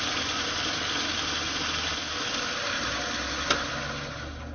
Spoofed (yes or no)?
no